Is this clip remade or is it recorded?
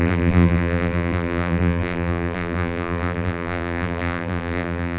remade